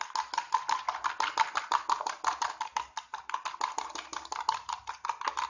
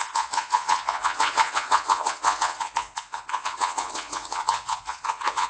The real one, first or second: first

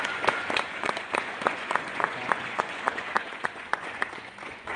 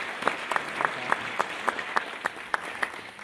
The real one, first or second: second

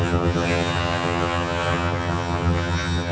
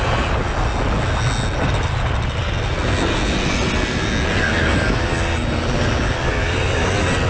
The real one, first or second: second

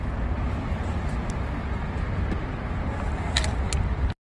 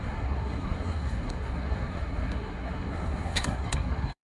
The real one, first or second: first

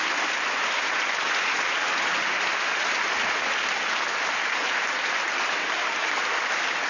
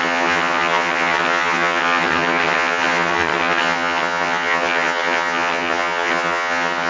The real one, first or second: first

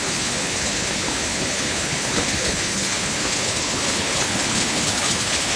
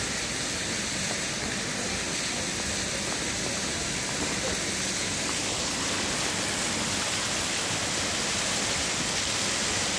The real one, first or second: second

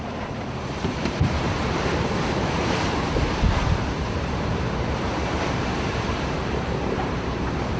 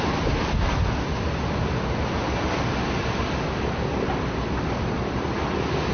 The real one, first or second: second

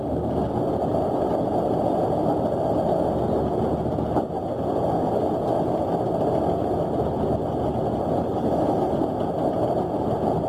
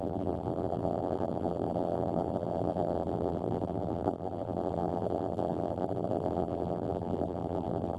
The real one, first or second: first